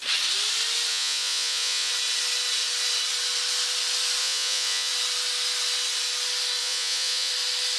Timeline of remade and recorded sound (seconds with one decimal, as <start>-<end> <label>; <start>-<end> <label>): 0.0-0.9 recorded; 0.9-1.9 remade; 1.9-4.2 recorded; 4.2-4.9 remade; 4.9-6.6 recorded; 6.6-7.3 remade; 7.3-7.8 recorded